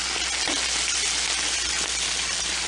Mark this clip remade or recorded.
remade